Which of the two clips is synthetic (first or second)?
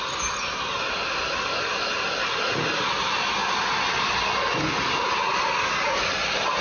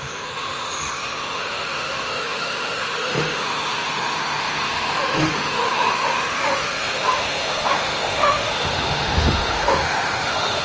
second